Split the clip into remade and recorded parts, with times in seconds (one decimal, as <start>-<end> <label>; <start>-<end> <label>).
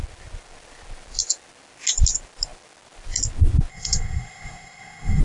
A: 0.0-3.7 recorded; 3.7-5.2 remade